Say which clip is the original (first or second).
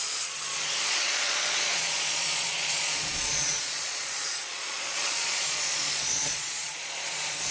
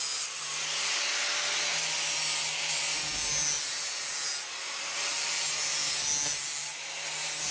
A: second